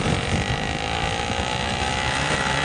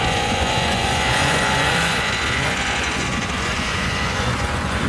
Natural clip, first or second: first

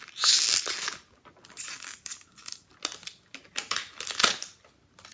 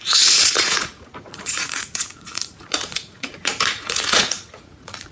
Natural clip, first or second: first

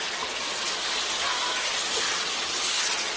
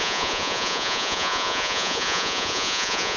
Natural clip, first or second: first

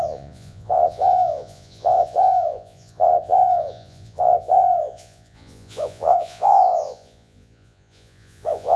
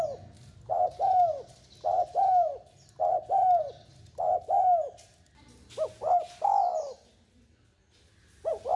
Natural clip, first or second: second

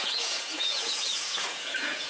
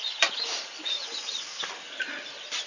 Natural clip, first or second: second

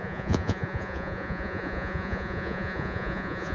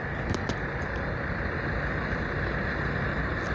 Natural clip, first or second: second